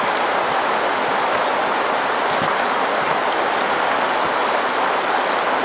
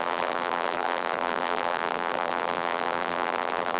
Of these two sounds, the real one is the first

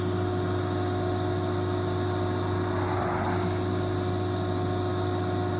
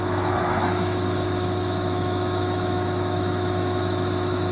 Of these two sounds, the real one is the first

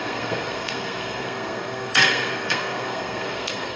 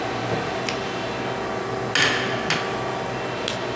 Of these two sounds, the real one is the second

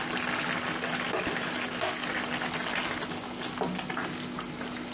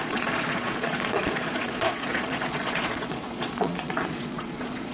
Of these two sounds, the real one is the first